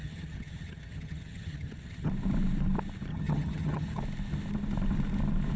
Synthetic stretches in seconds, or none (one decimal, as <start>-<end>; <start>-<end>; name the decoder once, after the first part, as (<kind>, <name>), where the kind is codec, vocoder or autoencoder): 0.0-2.1 (vocoder, HiFi-GAN); 3.1-4.0